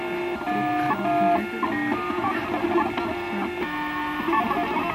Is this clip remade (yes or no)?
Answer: no